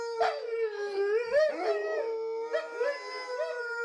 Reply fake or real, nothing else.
real